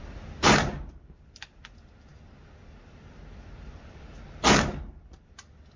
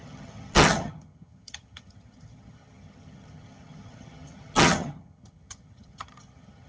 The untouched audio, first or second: first